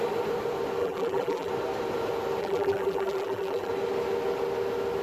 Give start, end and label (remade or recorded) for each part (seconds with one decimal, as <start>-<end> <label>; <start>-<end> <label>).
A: 0.0-0.8 recorded; 0.8-1.5 remade; 1.5-2.4 recorded; 2.4-3.7 remade; 3.7-5.0 recorded